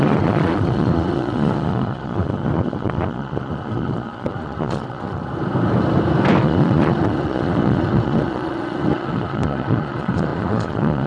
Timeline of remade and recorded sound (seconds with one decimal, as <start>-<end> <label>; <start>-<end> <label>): 0.0-5.2 remade; 5.2-6.4 recorded; 6.4-11.1 remade